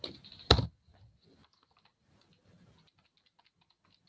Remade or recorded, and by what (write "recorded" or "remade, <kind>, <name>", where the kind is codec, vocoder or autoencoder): recorded